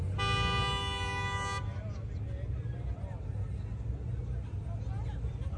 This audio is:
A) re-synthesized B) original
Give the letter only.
B